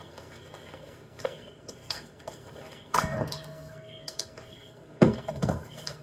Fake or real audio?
fake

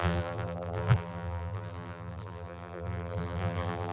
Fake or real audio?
fake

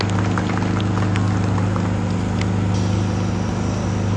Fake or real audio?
real